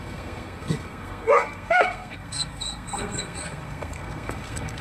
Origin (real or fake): fake